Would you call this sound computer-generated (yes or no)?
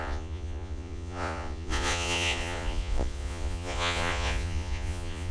yes